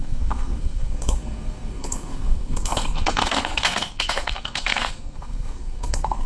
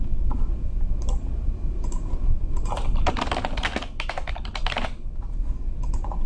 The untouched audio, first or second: second